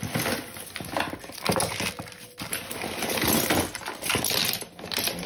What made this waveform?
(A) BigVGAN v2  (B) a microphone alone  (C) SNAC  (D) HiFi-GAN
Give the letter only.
B